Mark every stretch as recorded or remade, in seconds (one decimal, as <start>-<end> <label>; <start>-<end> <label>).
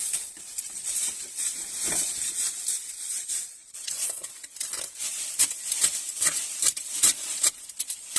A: 0.0-3.2 recorded; 3.2-4.3 remade; 4.3-8.2 recorded